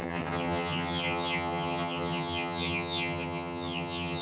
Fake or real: fake